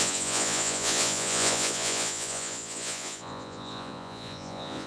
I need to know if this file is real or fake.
fake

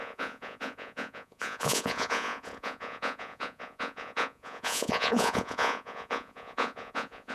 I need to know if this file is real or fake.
fake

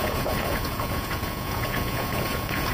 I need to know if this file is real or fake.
fake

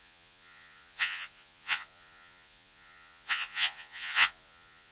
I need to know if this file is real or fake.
fake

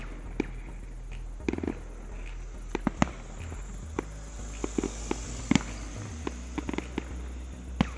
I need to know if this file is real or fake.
real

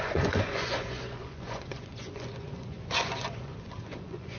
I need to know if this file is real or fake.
fake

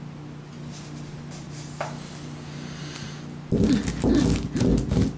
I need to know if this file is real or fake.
real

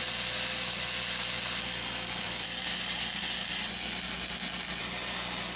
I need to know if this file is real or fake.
real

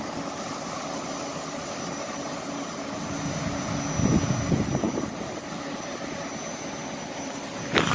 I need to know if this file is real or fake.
real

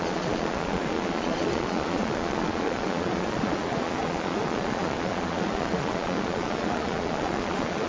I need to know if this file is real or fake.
fake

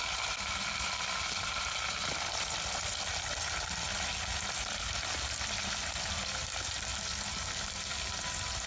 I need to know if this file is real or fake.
real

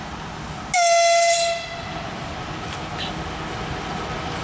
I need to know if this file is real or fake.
real